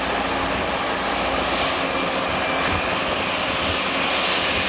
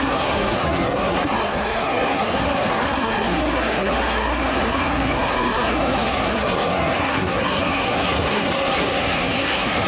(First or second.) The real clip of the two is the first